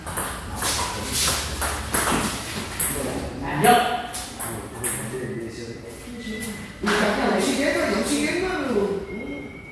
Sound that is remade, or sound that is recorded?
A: recorded